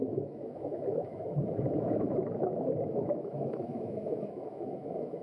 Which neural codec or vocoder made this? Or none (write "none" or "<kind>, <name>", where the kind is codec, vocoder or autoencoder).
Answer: autoencoder, DAC-VAE